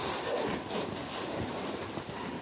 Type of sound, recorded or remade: recorded